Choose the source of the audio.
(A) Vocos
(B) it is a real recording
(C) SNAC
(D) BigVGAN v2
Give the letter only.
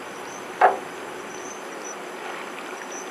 B